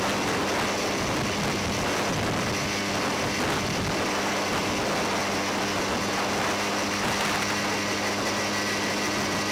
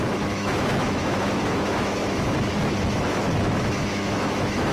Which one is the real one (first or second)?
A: first